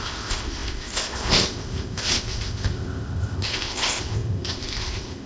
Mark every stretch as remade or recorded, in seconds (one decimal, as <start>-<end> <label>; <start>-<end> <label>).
0.0-5.3 remade